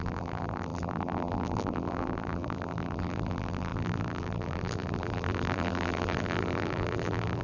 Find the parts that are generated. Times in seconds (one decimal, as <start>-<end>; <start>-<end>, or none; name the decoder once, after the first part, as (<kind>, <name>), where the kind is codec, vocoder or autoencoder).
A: 0.0-7.4 (vocoder, BigVGAN v2)